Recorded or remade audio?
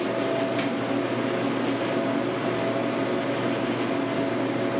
recorded